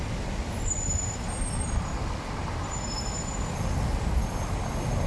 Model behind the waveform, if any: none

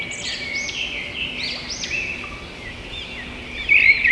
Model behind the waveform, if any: none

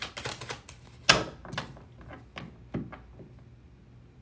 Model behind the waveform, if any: none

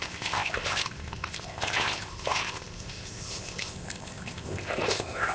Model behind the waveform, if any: codec, ZipCodec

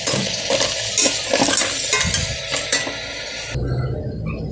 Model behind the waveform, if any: none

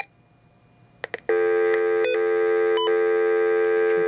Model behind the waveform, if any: none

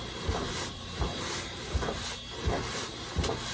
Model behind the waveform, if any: none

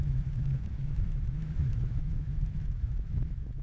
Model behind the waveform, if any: autoencoder, DAC-VAE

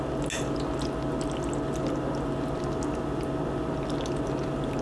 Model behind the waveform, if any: none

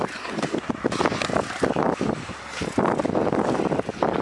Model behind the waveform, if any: none